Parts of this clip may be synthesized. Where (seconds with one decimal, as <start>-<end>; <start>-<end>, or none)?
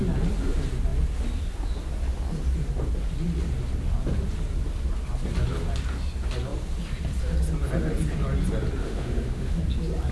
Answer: 8.8-9.6